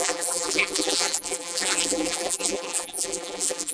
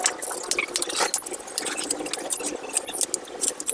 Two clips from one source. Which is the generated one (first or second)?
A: first